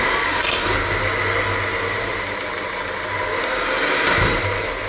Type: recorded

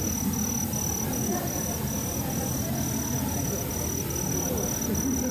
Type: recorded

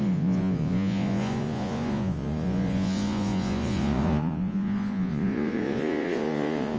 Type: remade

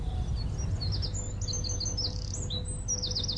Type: recorded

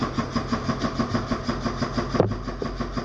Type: recorded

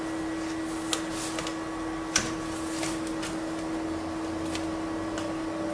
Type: recorded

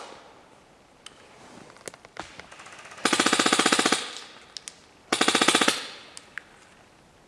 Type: recorded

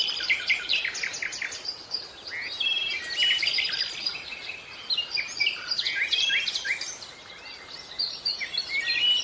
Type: recorded